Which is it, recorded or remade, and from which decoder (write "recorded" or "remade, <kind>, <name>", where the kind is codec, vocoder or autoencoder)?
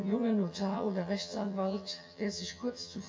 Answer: remade, vocoder, HiFi-GAN